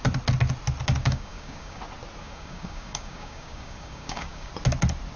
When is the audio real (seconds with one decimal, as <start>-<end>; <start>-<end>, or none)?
0.0-1.0; 1.8-2.2; 4.5-5.2